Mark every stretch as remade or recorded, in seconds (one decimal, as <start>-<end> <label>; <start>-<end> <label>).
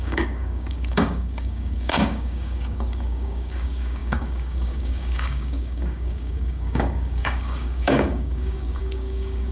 0.0-9.5 remade